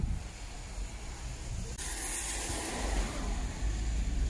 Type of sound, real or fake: real